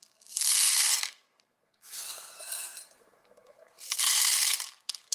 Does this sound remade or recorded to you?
remade